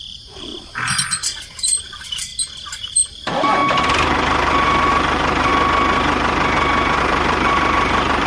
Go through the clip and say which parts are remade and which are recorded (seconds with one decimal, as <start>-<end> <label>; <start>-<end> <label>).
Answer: 0.0-0.5 remade; 0.5-1.8 recorded; 1.8-2.3 remade; 2.3-2.8 recorded; 2.8-3.6 remade; 3.6-4.9 recorded; 4.9-5.5 remade; 5.5-7.0 recorded; 7.0-8.3 remade

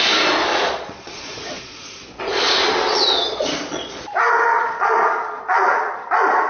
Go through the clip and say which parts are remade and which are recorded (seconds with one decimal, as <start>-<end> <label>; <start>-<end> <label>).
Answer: 0.0-0.5 recorded; 0.5-4.0 remade; 4.0-4.5 recorded; 4.5-5.9 remade; 5.9-6.5 recorded

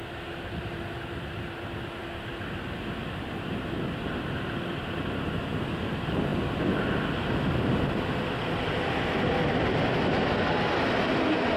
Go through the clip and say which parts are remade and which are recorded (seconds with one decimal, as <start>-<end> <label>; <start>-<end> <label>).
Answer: 0.0-11.6 recorded

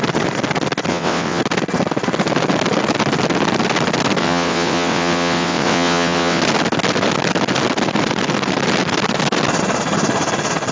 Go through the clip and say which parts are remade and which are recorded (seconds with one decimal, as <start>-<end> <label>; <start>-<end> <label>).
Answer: 0.0-0.9 recorded; 0.9-1.4 remade; 1.4-4.2 recorded; 4.2-6.4 remade; 6.4-10.7 recorded

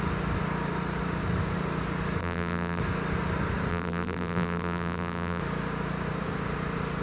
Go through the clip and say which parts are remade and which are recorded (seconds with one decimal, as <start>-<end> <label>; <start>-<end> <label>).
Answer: 0.0-2.2 recorded; 2.2-2.8 remade; 2.8-3.7 recorded; 3.7-5.4 remade; 5.4-7.0 recorded